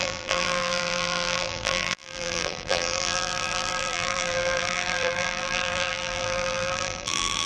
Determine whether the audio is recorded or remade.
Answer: remade